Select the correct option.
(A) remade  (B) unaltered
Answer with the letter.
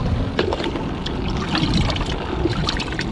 B